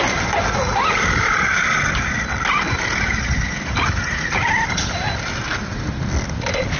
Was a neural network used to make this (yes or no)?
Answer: no